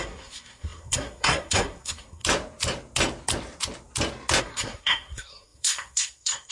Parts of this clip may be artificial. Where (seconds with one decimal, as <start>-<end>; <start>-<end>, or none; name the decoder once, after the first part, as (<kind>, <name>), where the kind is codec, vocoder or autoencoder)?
0.0-2.2 (codec, SNAC); 4.4-6.5